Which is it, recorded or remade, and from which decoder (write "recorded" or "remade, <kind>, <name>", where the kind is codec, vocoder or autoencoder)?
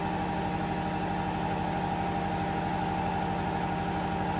recorded